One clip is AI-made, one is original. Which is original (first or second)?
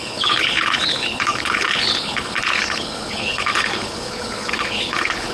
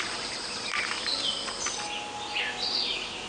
second